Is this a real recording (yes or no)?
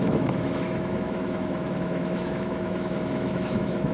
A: no